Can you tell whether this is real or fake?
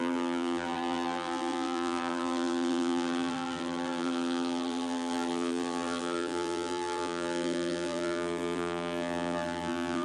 fake